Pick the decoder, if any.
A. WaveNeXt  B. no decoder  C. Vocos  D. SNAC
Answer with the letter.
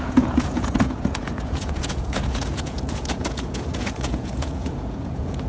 C